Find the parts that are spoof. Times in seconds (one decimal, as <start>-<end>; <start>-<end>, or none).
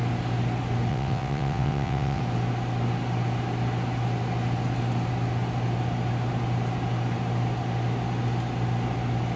0.9-2.2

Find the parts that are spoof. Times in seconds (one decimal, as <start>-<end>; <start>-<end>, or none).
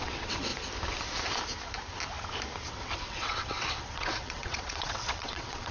0.0-0.5; 2.7-5.7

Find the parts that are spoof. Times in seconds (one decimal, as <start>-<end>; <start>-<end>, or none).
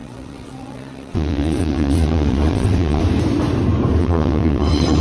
0.0-3.0; 4.0-5.0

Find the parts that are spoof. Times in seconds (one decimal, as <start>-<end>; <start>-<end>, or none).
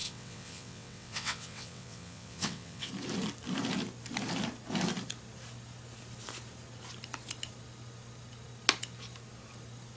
0.0-2.9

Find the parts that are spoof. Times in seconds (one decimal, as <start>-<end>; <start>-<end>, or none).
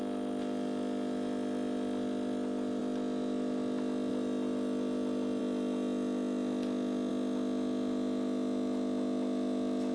none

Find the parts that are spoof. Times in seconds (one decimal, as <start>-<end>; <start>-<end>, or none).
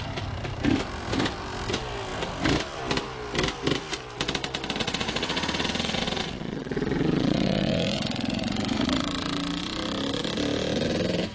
4.8-9.6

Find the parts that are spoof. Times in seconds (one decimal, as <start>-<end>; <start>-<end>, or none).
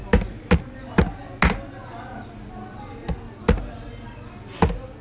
none